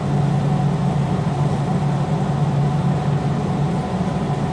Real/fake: real